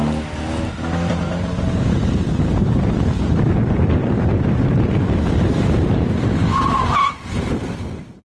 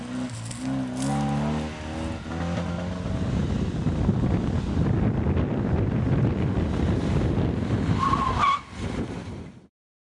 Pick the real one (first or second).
second